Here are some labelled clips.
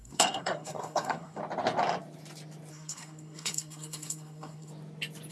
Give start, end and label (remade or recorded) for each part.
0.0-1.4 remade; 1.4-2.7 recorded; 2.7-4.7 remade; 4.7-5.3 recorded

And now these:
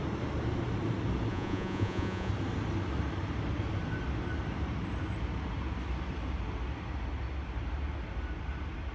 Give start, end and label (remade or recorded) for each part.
0.0-1.3 recorded; 1.3-2.3 remade; 2.3-8.9 recorded

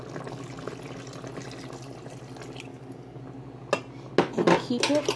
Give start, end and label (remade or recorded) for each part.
0.0-2.7 recorded; 2.7-3.2 remade; 3.2-5.2 recorded